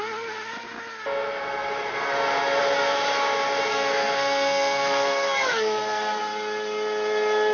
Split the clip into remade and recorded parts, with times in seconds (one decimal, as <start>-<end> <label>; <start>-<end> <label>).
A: 0.0-3.7 recorded; 3.7-6.2 remade; 6.2-7.5 recorded

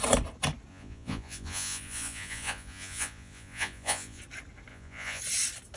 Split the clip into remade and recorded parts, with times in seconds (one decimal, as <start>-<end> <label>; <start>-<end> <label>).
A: 0.0-0.7 recorded; 0.7-4.2 remade; 4.2-4.7 recorded; 4.7-5.2 remade; 5.2-5.8 recorded

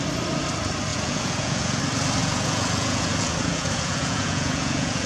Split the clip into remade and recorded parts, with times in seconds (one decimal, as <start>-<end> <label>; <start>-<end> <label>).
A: 0.0-0.9 recorded; 0.9-1.8 remade; 1.8-2.2 recorded; 2.2-5.1 remade

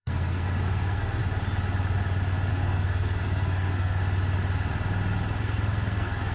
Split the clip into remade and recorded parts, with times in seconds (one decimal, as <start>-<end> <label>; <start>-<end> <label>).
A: 0.0-1.2 remade; 1.2-2.5 recorded; 2.5-4.0 remade; 4.0-5.4 recorded; 5.4-6.3 remade